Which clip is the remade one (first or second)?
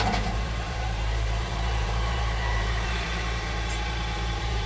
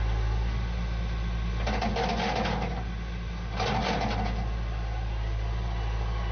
first